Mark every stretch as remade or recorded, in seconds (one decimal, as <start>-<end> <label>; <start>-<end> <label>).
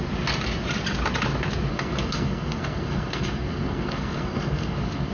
0.0-1.7 recorded; 1.7-5.1 remade